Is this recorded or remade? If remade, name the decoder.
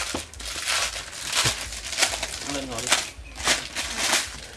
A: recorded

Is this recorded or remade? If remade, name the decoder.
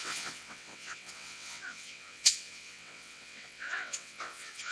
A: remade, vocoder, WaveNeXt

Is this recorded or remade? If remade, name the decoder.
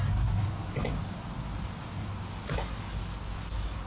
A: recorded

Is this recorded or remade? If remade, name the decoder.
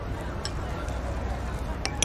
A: recorded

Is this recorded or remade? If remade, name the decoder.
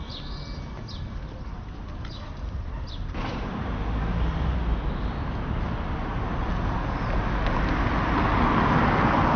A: recorded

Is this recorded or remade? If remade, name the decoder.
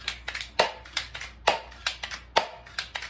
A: recorded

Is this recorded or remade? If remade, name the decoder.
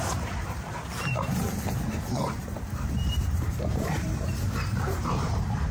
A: remade, vocoder, BigVGAN v2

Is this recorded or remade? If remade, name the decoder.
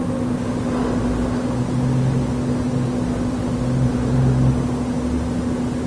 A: recorded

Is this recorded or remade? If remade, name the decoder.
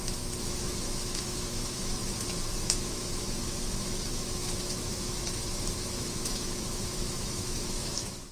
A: remade, autoencoder, DAC-VAE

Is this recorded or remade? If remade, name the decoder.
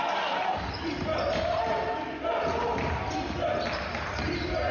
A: recorded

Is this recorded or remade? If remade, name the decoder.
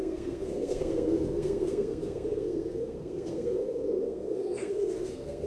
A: remade, codec, SNAC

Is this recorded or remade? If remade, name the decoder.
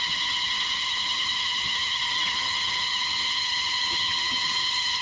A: remade, vocoder, HiFi-GAN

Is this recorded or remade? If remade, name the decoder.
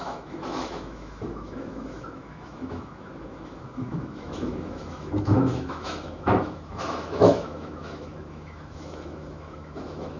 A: remade, autoencoder, DAC-VAE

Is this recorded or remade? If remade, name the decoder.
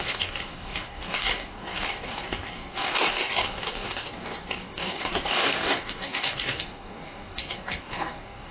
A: remade, codec, DAC